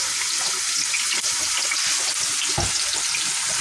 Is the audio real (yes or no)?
yes